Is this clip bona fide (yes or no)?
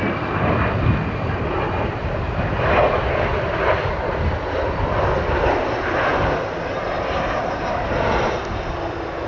yes